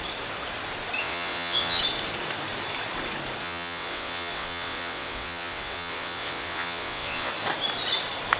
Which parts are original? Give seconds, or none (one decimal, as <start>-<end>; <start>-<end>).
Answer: 0.0-1.0; 1.8-3.4; 7.3-8.4